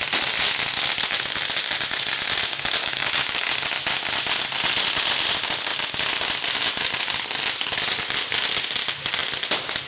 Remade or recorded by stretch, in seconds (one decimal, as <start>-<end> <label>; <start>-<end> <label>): 0.0-2.8 recorded; 2.8-3.5 remade; 3.5-9.9 recorded